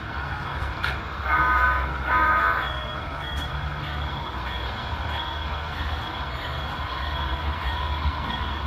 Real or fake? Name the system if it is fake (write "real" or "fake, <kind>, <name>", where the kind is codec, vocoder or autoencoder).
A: fake, codec, SNAC